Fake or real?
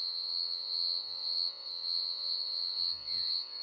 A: fake